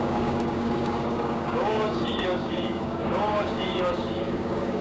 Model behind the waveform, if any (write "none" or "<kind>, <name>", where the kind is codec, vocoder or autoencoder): codec, DAC